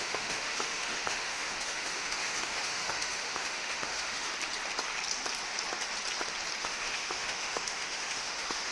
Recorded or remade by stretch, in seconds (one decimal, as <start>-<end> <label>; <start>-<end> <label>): 0.0-4.3 remade; 4.3-6.6 recorded; 6.6-8.7 remade